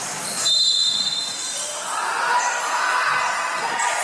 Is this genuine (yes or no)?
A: yes